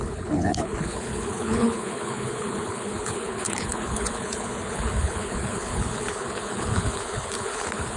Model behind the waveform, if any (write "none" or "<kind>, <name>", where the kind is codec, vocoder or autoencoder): codec, HILCodec